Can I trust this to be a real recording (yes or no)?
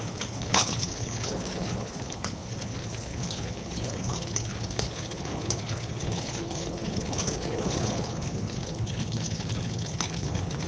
no